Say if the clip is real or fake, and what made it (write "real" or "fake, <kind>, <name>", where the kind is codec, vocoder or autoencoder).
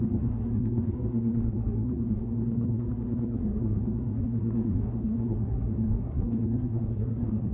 fake, codec, SNAC